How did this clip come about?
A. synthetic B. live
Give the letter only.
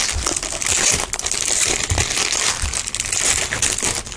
B